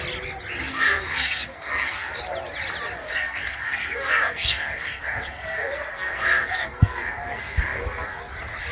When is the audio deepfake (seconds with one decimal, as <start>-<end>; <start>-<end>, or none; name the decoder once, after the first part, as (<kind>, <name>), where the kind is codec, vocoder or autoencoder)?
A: 0.7-2.2 (codec, SNAC); 3.0-8.2